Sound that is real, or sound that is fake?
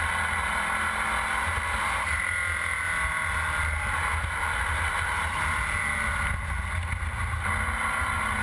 real